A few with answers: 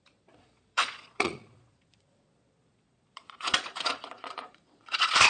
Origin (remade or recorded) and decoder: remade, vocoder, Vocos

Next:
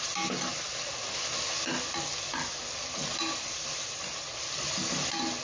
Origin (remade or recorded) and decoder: recorded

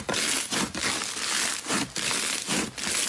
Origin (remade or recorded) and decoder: recorded